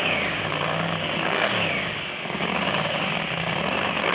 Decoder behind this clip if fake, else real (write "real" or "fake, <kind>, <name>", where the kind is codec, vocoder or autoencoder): fake, codec, DAC